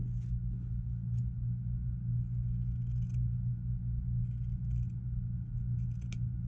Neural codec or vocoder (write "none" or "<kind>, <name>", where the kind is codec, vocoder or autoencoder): none